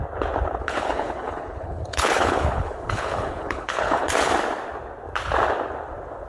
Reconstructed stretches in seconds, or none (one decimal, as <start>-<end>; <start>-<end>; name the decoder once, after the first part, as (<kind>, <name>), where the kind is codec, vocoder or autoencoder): 0.6-4.1 (codec, HILCodec)